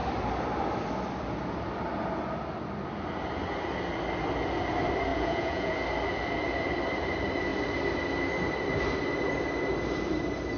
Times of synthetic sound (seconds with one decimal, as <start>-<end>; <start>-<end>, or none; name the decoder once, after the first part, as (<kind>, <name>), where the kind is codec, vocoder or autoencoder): 5.1-5.7 (vocoder, Vocos)